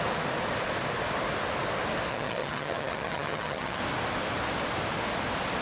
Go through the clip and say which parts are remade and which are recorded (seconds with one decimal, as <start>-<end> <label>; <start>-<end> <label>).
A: 0.0-2.1 recorded; 2.1-3.8 remade; 3.8-5.6 recorded